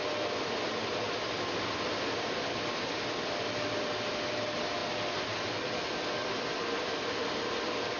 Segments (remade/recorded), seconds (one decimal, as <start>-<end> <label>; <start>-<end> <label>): 0.0-8.0 recorded